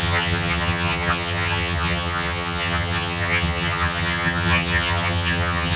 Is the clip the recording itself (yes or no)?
no